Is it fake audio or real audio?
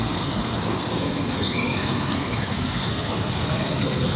fake